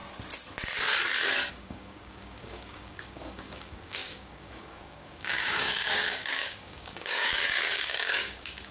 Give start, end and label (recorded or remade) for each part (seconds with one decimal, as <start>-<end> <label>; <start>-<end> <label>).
0.0-1.5 recorded; 1.5-8.7 remade